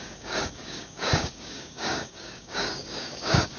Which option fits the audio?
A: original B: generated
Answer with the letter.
B